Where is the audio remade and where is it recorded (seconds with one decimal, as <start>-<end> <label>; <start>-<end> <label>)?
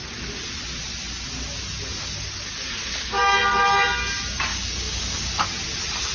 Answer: 0.0-4.5 recorded; 4.5-5.4 remade; 5.4-6.1 recorded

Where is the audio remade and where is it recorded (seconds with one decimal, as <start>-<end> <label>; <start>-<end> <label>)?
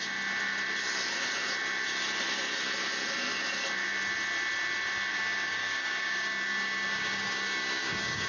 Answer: 0.0-5.1 recorded; 5.1-8.3 remade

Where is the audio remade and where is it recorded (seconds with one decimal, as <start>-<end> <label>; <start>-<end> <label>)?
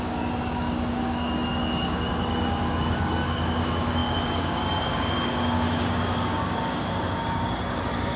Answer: 0.0-8.2 remade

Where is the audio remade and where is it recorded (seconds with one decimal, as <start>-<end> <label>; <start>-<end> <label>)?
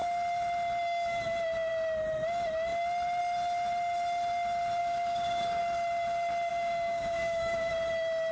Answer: 0.0-4.8 recorded; 4.8-5.6 remade; 5.6-6.5 recorded; 6.5-7.7 remade; 7.7-8.3 recorded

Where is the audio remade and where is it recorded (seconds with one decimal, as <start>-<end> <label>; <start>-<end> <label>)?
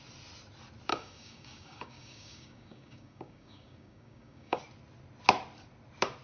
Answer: 0.0-0.9 recorded; 0.9-4.6 remade; 4.6-6.2 recorded